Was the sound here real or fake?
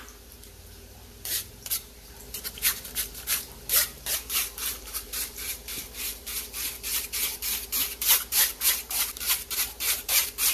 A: fake